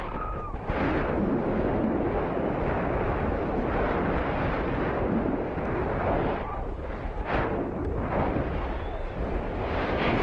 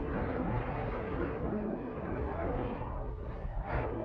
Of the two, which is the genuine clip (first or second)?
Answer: first